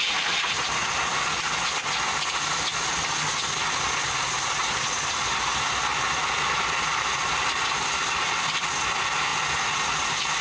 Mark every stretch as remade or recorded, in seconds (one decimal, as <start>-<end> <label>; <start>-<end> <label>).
0.0-10.4 recorded